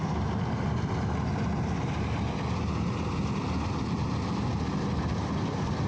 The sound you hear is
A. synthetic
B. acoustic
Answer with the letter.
B